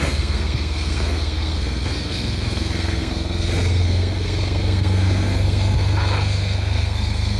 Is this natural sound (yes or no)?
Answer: no